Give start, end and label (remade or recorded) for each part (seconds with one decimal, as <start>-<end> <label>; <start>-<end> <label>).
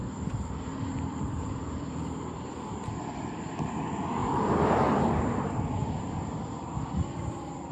0.0-3.2 remade; 3.2-4.2 recorded; 4.2-4.7 remade; 4.7-5.8 recorded; 5.8-6.3 remade; 6.3-7.7 recorded